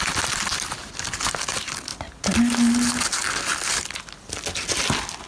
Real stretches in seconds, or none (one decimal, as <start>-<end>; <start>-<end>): 0.0-5.3